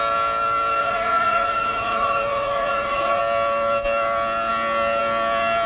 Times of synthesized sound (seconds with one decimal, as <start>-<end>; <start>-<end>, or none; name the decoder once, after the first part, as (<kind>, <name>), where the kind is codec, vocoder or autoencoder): 0.8-3.2 (vocoder, Vocos)